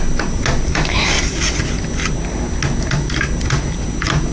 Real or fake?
real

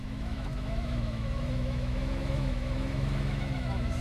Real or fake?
fake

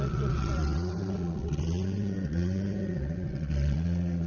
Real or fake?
fake